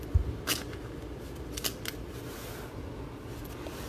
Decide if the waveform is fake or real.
real